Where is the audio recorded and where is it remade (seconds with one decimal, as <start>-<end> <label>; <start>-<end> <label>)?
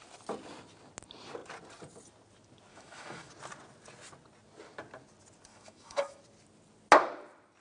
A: 0.0-2.7 recorded; 2.7-3.3 remade; 3.3-5.5 recorded; 5.5-6.2 remade; 6.2-7.6 recorded